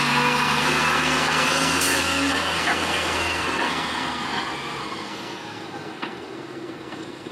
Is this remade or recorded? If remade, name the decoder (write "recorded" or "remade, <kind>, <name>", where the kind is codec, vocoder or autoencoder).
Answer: remade, codec, SNAC